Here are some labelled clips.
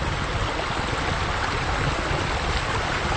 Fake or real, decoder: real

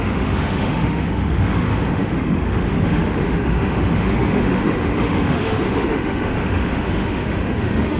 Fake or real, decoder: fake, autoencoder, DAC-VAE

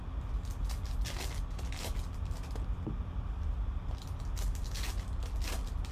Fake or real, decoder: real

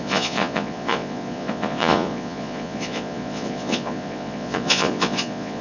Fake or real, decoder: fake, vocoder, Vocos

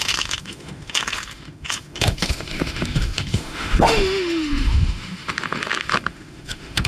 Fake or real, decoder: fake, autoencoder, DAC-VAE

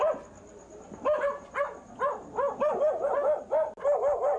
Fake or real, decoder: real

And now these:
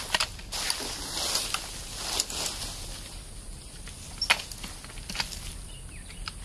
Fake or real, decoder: real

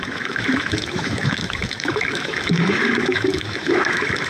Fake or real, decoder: fake, autoencoder, DAC-VAE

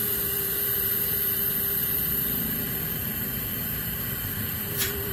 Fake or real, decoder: fake, vocoder, BigVGAN v2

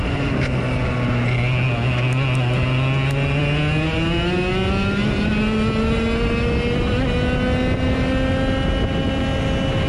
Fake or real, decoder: real